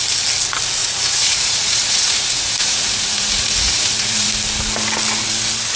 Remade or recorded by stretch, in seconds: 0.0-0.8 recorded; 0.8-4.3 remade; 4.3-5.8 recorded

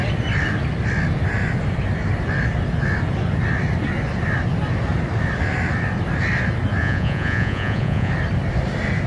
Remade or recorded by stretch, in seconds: 0.0-6.8 recorded; 6.8-8.1 remade; 8.1-9.1 recorded